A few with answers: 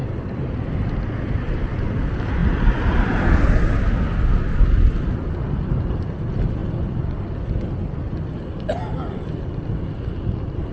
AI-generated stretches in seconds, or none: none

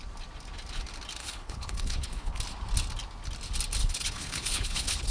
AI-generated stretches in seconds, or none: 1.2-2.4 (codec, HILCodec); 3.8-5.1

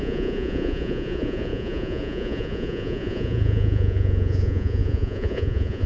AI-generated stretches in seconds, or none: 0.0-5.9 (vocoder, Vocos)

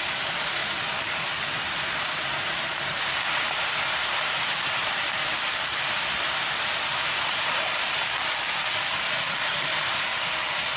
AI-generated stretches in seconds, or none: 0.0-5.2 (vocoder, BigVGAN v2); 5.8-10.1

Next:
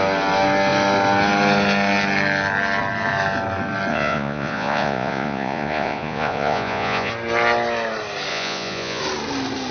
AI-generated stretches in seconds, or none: 3.9-7.1 (vocoder, Vocos); 8.3-9.0

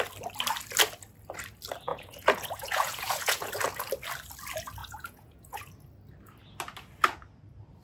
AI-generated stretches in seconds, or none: 1.9-3.5 (vocoder, Vocos); 4.8-5.7